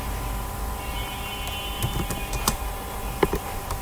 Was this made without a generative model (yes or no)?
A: no